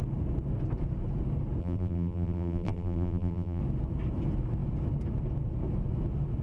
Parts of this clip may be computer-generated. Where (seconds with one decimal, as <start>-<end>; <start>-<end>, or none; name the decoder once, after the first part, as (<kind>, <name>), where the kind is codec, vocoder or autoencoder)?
1.6-3.6 (vocoder, BigVGAN v2)